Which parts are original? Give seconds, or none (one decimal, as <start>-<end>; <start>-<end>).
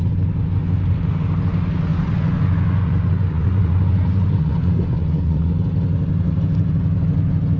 0.0-1.9; 5.5-7.6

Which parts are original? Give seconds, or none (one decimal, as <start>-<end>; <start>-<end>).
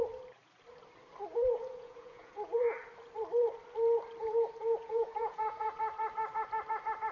0.0-1.3; 2.6-4.8; 5.7-7.1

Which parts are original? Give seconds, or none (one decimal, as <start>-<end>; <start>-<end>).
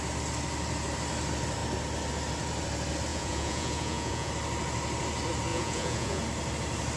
0.0-3.1; 4.3-5.5; 6.2-7.0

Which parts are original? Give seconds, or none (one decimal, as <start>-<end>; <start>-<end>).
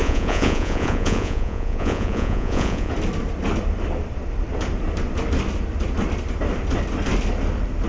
2.9-7.9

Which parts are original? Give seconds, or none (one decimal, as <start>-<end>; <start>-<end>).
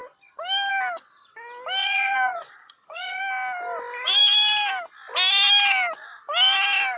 0.0-1.8; 3.2-7.0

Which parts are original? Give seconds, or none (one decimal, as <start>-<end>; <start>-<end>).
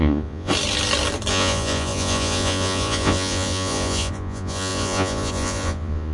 0.5-1.3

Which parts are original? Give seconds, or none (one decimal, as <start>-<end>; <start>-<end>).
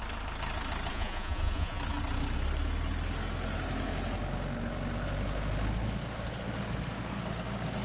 0.0-0.9; 1.8-7.8